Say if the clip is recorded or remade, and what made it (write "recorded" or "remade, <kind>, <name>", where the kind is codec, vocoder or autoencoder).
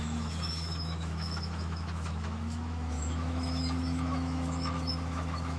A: remade, autoencoder, DAC-VAE